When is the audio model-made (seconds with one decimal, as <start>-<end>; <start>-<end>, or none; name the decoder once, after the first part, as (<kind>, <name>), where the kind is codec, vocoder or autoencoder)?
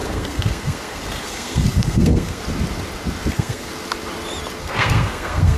0.0-2.4 (codec, SNAC); 3.3-3.7; 4.6-5.6